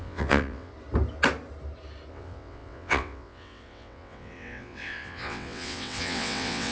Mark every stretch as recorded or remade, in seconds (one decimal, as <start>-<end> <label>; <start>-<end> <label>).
0.0-0.7 remade; 0.7-2.1 recorded; 2.1-6.7 remade